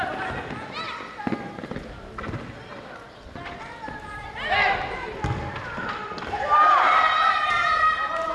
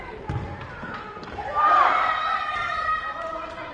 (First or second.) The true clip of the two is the first